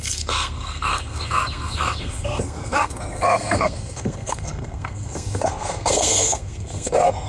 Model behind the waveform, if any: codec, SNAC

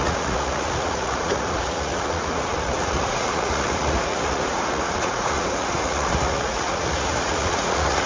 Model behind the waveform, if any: vocoder, Vocos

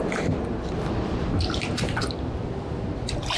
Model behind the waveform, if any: none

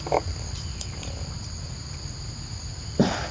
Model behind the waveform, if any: none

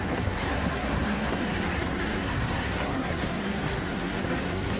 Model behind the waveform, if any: codec, SNAC